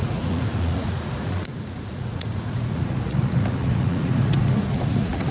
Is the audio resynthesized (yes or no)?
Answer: yes